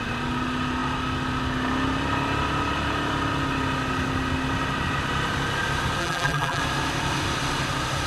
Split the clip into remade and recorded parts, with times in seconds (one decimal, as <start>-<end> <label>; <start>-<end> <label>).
0.0-6.0 recorded; 6.0-6.6 remade; 6.6-8.1 recorded